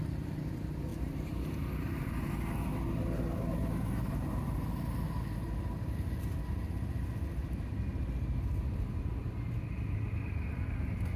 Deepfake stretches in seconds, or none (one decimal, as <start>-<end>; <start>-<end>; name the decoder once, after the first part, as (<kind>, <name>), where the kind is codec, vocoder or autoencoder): none